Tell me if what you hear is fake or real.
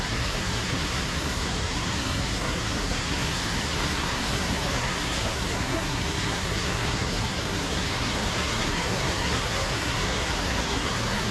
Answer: fake